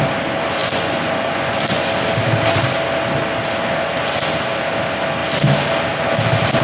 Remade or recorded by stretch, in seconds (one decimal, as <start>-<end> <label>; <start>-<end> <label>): 0.0-0.6 recorded; 0.6-1.9 remade; 1.9-6.6 recorded